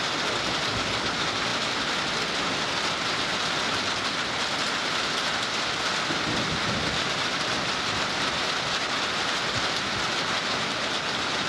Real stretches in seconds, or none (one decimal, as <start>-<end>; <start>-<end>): 0.0-11.5